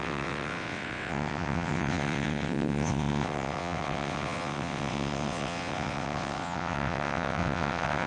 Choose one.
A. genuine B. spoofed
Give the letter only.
B